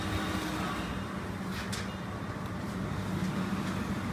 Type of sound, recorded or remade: recorded